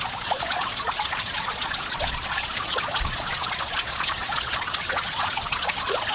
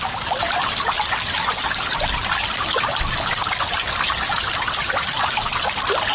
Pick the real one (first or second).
second